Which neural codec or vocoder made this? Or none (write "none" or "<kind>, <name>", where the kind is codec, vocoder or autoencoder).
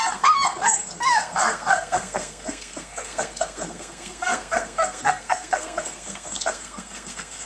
codec, SNAC